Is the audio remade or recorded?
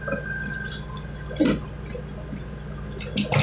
recorded